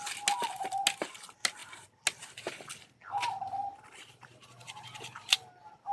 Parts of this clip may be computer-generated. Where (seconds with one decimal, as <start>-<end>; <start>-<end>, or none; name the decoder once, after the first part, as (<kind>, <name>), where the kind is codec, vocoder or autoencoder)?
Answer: none